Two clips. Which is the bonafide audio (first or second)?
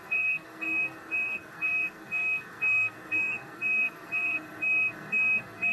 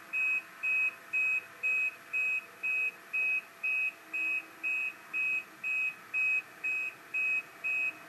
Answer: second